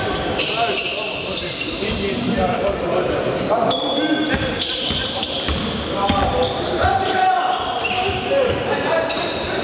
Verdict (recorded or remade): remade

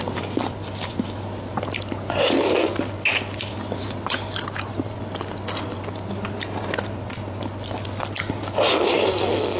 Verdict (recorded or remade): recorded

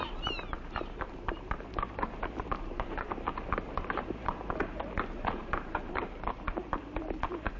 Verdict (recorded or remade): remade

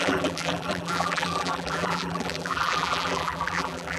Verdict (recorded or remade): remade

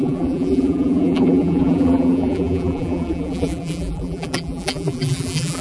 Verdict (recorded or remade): remade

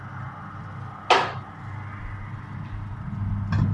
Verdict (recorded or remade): recorded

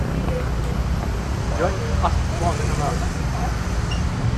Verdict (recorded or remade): recorded